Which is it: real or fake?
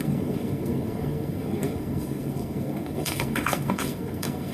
fake